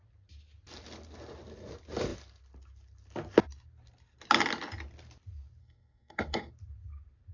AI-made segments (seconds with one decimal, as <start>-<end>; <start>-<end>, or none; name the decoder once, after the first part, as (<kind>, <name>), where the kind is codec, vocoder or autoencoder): 5.6-6.5 (codec, SNAC)